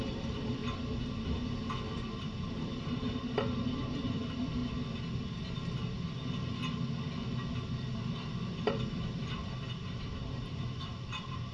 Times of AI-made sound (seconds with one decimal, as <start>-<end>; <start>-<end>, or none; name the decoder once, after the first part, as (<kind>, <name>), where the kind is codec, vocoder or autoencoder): 0.0-0.6 (vocoder, BigVGAN v2); 2.5-4.6; 8.6-11.5